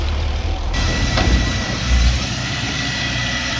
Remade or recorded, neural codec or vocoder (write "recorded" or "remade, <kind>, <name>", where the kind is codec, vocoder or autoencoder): remade, vocoder, BigVGAN v2